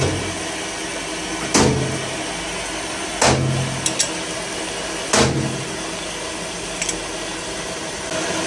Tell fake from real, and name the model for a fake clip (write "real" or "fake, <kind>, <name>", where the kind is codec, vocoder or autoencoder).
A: real